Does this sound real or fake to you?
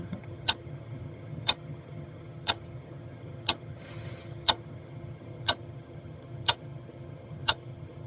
fake